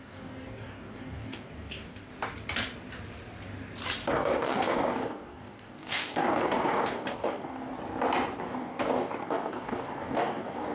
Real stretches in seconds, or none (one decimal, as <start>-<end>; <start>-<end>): 2.1-4.1; 7.7-8.4